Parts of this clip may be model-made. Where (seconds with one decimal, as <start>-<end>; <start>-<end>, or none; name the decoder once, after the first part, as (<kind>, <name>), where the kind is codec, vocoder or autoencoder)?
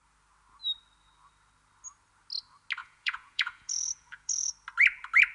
2.8-4.5 (vocoder, Vocos)